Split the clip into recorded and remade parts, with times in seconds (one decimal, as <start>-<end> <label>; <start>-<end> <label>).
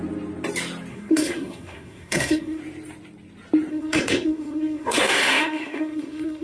0.0-0.9 recorded; 0.9-2.6 remade; 2.6-3.7 recorded; 3.7-6.4 remade